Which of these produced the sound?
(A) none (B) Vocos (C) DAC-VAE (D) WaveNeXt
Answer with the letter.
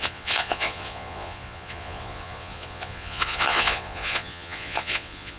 B